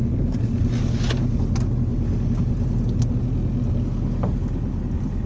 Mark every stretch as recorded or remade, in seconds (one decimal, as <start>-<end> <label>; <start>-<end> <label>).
0.0-5.3 recorded